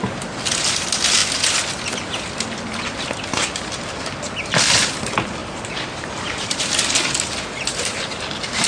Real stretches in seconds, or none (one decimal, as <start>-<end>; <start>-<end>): 0.0-5.4; 6.7-8.7